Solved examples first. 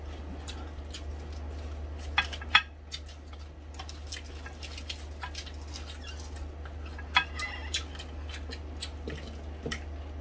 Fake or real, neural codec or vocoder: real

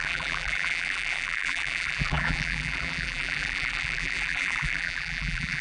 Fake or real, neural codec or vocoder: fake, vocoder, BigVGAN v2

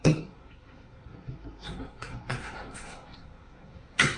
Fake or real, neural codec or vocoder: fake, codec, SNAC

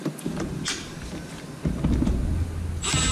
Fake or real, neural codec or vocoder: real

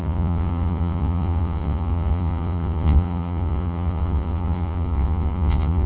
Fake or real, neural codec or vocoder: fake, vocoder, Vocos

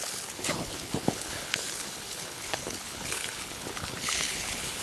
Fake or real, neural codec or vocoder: fake, codec, HILCodec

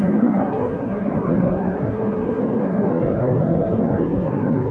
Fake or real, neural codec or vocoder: fake, codec, SNAC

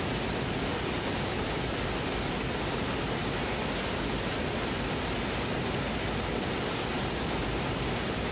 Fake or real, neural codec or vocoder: real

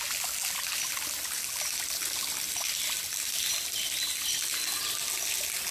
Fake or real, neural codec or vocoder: real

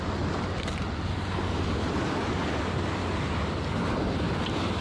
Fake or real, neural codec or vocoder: real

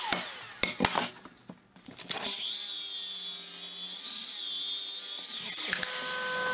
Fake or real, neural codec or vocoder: real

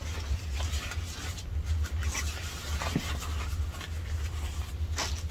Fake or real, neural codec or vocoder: real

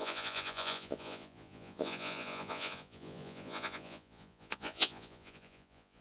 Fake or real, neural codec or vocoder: fake, vocoder, Vocos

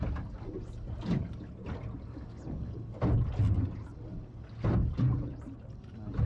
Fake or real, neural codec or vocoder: real